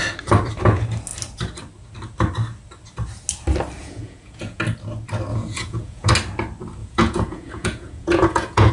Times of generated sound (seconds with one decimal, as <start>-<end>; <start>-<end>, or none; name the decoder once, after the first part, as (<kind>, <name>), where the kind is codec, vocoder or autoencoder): 3.8-4.6 (vocoder, Vocos); 5.3-6.1; 6.8-8.7